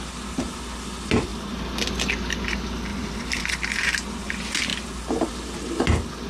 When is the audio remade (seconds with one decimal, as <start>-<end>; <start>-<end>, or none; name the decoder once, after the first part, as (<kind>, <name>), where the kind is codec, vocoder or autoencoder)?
2.9-3.4 (vocoder, BigVGAN v2)